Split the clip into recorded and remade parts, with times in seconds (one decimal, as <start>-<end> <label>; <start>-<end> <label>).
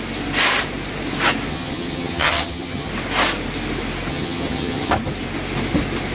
0.0-1.5 recorded; 1.5-2.9 remade; 2.9-4.1 recorded; 4.1-4.9 remade; 4.9-6.1 recorded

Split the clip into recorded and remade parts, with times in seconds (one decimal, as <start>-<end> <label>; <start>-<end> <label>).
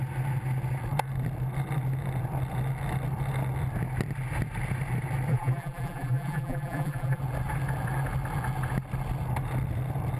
0.0-5.3 recorded; 5.3-7.2 remade; 7.2-10.2 recorded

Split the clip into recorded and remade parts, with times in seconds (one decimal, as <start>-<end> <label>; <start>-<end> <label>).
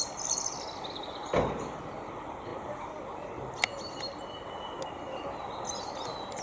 0.0-6.4 recorded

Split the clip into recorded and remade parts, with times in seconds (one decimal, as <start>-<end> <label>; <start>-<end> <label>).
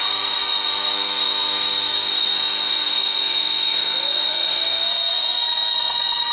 0.0-6.3 remade